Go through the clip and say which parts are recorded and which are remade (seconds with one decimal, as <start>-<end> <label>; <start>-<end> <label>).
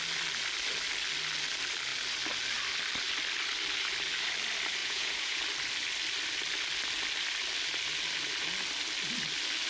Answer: 0.0-4.8 recorded; 4.8-5.4 remade; 5.4-9.7 recorded